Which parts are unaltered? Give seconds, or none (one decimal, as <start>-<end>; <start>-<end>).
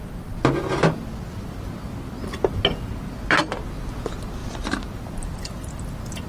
0.0-4.4; 5.7-6.3